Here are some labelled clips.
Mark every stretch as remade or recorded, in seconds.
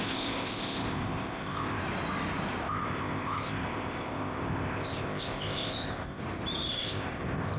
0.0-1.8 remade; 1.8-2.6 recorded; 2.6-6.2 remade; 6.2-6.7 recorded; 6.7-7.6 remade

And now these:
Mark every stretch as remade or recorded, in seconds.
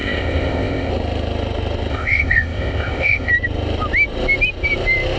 0.0-0.9 remade; 0.9-1.9 recorded; 1.9-3.3 remade; 3.3-5.2 recorded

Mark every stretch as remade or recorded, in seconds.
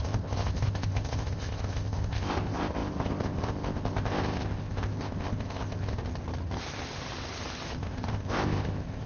0.0-6.0 remade; 6.0-7.8 recorded; 7.8-9.1 remade